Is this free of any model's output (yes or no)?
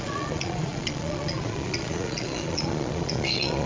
no